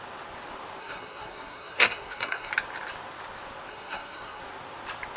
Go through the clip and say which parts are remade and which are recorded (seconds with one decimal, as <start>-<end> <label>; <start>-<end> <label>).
0.0-0.8 recorded; 0.8-2.5 remade; 2.5-3.7 recorded; 3.7-4.4 remade; 4.4-5.2 recorded